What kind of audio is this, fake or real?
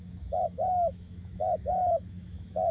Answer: fake